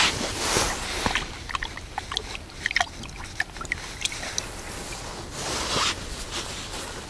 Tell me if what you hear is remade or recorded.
recorded